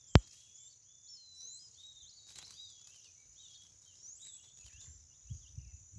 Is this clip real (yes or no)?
yes